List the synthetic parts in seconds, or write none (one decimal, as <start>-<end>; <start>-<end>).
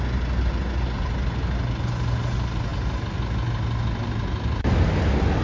none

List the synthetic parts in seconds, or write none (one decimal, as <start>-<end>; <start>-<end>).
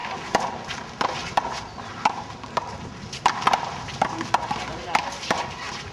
none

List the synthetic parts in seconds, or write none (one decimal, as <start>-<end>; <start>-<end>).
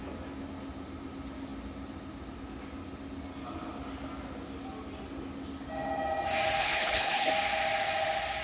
6.6-7.3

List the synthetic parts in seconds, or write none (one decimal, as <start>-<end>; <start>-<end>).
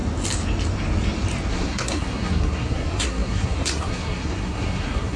1.5-5.2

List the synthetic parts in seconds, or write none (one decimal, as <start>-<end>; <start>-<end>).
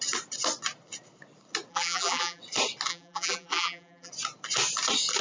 1.7-2.4; 2.9-4.1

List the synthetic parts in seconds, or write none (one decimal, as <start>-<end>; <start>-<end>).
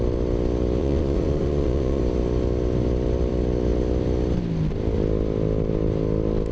0.8-2.0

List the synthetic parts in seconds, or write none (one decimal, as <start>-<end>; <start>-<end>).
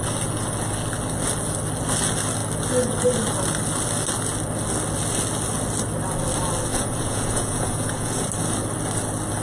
6.7-8.3